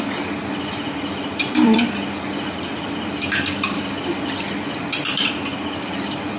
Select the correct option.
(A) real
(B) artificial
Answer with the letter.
B